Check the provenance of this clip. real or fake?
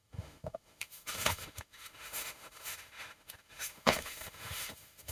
fake